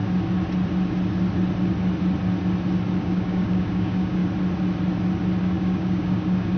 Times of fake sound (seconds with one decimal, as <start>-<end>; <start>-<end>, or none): 3.0-4.2; 5.4-6.6

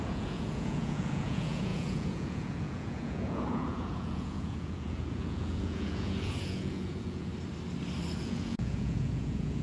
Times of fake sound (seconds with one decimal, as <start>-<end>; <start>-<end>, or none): 0.0-7.3; 8.2-9.6